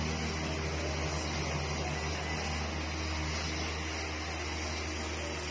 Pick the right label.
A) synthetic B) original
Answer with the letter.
B